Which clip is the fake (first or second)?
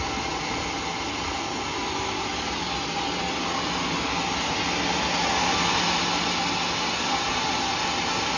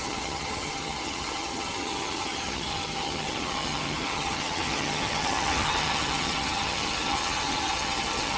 second